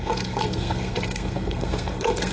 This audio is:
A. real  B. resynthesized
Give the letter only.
B